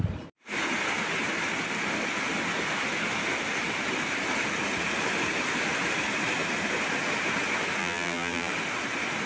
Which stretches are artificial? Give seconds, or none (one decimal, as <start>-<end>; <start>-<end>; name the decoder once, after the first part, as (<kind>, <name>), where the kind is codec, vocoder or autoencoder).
7.8-8.5 (vocoder, BigVGAN v2)